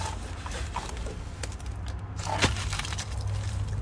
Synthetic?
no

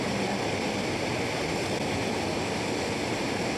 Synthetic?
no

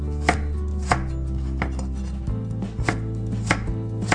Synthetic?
no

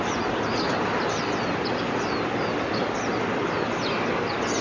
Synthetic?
no